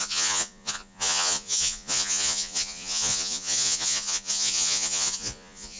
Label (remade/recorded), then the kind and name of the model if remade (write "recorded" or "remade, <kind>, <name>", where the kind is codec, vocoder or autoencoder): remade, vocoder, Vocos